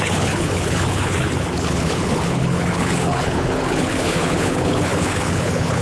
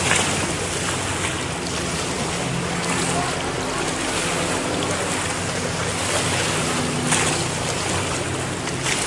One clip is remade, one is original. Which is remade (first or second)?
first